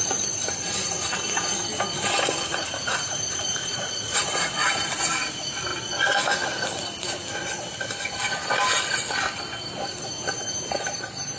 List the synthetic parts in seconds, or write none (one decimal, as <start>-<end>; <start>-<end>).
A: 3.6-4.7